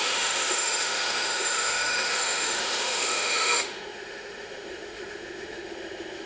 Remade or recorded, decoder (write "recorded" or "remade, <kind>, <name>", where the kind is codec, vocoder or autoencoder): remade, autoencoder, DAC-VAE